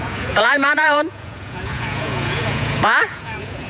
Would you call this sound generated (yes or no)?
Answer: yes